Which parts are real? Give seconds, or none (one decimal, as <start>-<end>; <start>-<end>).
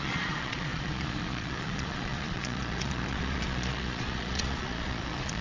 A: none